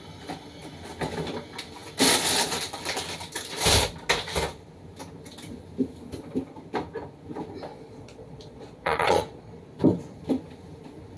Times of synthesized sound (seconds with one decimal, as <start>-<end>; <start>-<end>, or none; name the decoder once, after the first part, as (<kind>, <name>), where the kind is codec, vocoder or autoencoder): 7.7-9.5 (vocoder, Vocos)